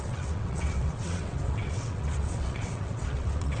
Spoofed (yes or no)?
yes